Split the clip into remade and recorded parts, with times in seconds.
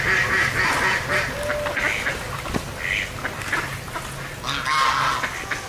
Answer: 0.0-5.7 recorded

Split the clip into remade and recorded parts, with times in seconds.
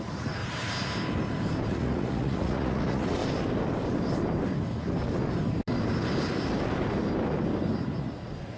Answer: 0.0-0.4 remade; 0.4-1.7 recorded; 1.7-3.2 remade; 3.2-8.0 recorded; 8.0-8.6 remade